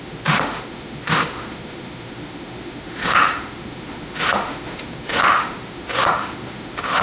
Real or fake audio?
fake